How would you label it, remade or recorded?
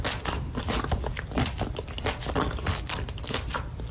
recorded